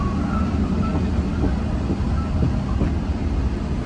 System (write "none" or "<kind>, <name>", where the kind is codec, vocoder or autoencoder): none